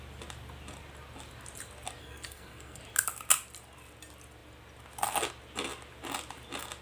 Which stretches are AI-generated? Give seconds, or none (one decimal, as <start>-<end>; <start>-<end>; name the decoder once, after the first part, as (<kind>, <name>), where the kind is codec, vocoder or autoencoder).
2.0-2.8 (codec, SNAC)